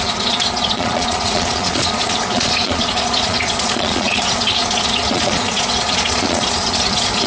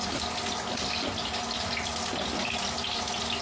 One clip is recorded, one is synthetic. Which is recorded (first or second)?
second